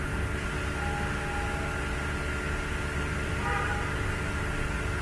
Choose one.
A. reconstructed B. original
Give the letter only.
B